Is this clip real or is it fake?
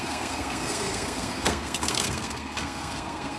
fake